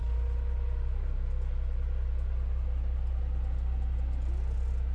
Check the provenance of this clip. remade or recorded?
recorded